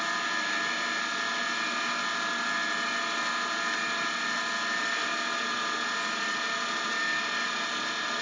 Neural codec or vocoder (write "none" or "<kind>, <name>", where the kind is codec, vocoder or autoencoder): none